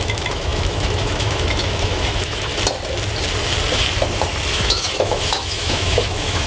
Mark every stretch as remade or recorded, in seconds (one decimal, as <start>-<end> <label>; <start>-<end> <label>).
0.0-2.5 remade; 2.5-4.5 recorded; 4.5-6.5 remade